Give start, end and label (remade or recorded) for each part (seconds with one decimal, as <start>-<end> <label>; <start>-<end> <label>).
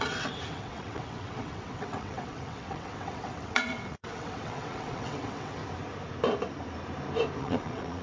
0.0-5.6 remade; 5.6-7.4 recorded; 7.4-8.0 remade